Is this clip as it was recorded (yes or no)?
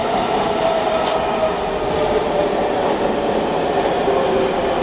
yes